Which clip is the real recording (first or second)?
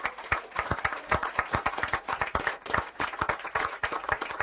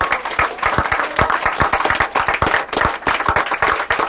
second